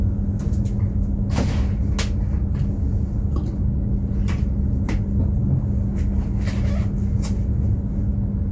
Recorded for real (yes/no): yes